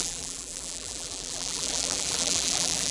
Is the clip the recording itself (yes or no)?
no